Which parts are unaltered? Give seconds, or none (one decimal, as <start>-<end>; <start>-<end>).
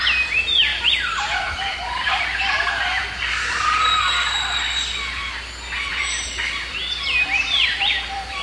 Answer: 3.0-5.9